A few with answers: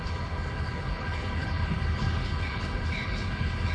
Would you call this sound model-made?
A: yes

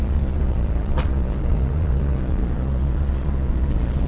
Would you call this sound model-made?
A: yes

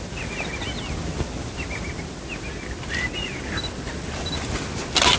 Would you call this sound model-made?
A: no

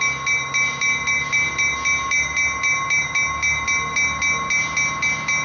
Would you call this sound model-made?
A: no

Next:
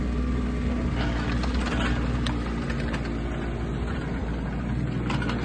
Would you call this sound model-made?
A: no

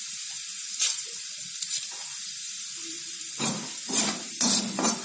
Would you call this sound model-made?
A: yes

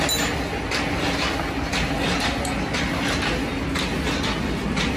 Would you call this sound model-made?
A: no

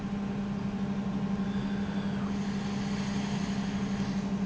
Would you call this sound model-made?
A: no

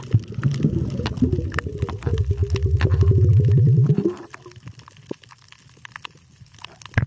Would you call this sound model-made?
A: no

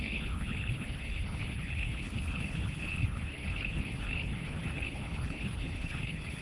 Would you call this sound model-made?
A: yes